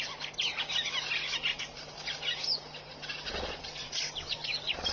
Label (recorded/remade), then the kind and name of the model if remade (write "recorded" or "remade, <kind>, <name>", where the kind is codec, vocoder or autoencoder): recorded